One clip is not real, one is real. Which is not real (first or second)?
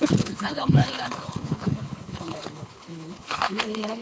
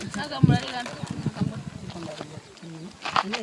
first